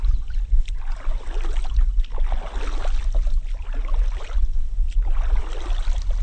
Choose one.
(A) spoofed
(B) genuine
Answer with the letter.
B